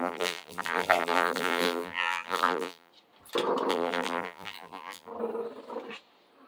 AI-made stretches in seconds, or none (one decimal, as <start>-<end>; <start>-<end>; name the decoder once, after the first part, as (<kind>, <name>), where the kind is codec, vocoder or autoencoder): 0.0-2.9 (vocoder, BigVGAN v2); 3.7-5.1